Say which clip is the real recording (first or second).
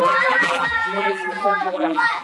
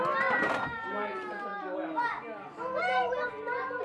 second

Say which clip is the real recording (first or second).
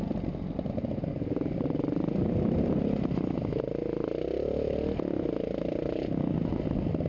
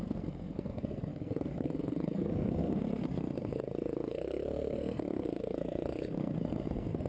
first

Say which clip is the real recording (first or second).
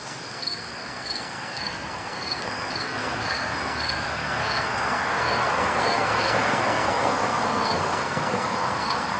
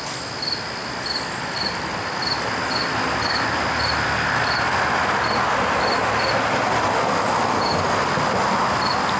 second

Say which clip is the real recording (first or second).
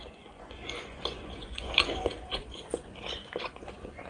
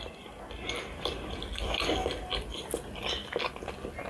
second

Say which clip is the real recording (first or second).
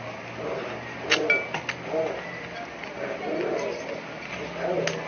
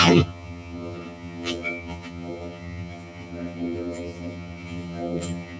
first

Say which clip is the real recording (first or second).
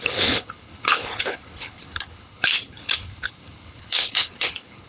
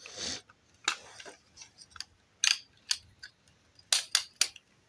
second